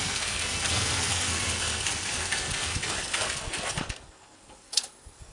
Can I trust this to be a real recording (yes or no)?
no